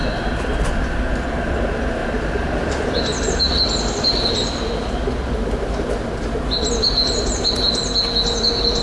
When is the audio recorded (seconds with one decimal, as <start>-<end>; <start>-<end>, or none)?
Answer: 0.0-8.8